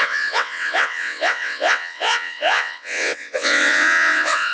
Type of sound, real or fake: fake